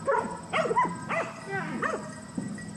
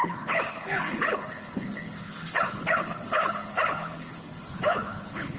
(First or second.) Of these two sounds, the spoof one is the second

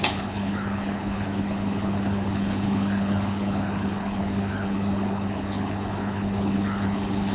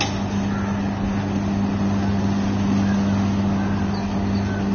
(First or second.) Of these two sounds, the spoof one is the first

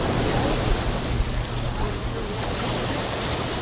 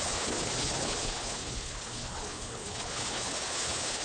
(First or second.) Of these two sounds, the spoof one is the second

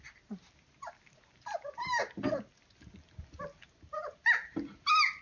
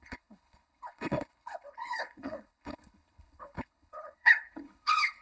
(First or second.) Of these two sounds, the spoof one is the second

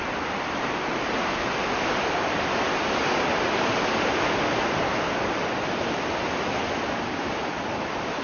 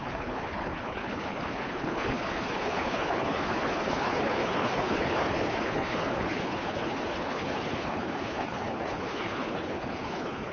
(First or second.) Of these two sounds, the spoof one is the second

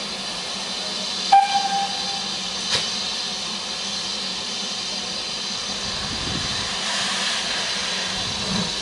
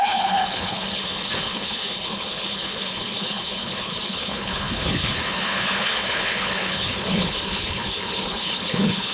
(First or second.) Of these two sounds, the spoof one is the second